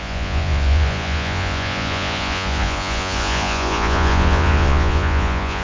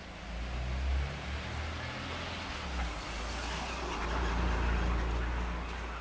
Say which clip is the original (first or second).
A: second